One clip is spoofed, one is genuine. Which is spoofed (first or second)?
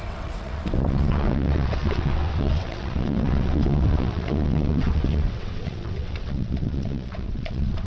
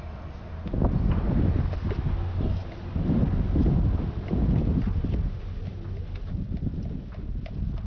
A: first